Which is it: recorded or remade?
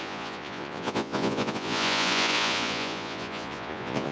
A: remade